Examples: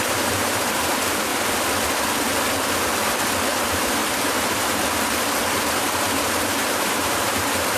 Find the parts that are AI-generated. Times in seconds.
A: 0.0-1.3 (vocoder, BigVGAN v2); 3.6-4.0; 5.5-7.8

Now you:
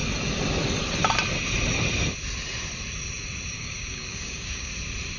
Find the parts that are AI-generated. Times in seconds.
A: 3.5-4.7 (codec, DAC)

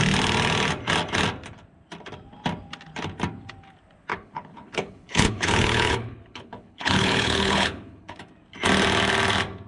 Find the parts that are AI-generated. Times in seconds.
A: 4.1-8.2 (codec, HILCodec)

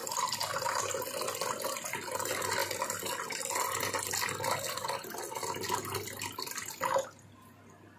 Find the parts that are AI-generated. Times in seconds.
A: none

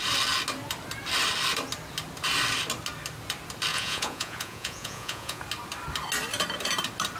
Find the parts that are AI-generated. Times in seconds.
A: 3.7-5.4 (vocoder, Vocos)

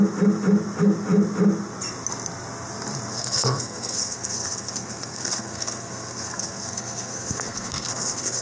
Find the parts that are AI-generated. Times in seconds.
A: 3.1-8.4 (codec, SNAC)

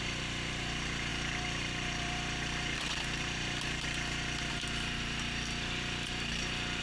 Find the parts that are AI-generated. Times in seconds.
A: 0.0-6.8 (vocoder, BigVGAN v2)